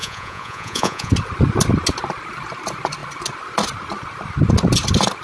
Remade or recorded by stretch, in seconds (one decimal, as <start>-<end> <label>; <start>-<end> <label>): 0.0-1.1 remade; 1.1-5.2 recorded